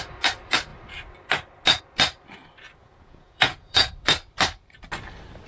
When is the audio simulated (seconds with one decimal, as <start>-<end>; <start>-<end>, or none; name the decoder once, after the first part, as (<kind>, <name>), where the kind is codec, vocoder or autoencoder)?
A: 2.8-3.9 (vocoder, Vocos)